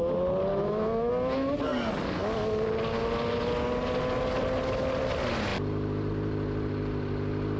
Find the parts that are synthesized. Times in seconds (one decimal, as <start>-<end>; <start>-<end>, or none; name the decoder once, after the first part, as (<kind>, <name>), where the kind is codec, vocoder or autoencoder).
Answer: 0.5-1.1 (autoencoder, DAC-VAE)